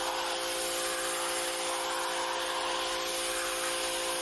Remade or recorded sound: recorded